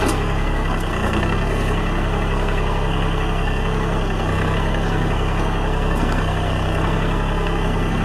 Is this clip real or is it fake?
fake